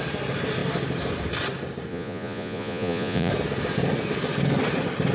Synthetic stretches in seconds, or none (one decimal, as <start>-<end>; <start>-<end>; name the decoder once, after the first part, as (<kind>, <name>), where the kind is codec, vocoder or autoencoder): 1.9-3.3 (vocoder, Vocos)